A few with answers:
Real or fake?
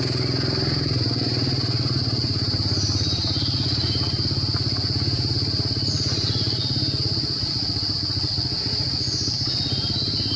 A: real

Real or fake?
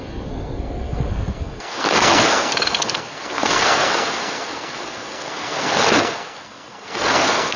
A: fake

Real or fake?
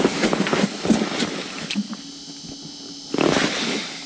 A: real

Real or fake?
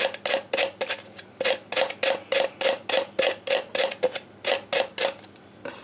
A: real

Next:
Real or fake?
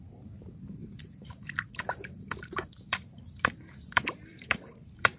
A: fake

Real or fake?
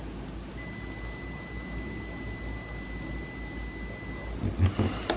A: real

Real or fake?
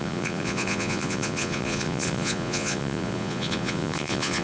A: fake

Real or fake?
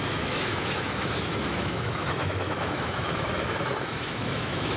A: fake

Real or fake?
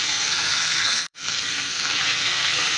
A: fake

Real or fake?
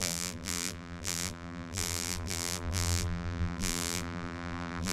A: fake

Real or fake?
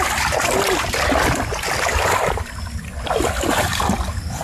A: real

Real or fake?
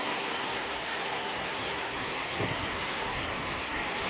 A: fake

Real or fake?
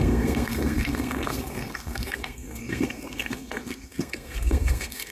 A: fake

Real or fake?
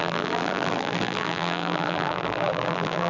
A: fake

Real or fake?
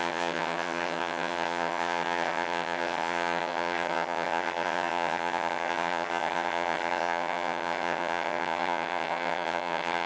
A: fake